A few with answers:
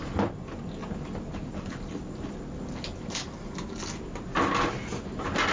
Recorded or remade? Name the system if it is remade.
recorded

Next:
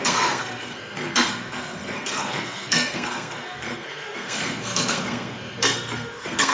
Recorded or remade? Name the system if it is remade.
remade, codec, SNAC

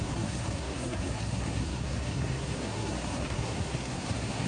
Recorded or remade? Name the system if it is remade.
remade, codec, SNAC